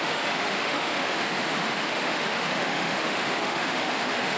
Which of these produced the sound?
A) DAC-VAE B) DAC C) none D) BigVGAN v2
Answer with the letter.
A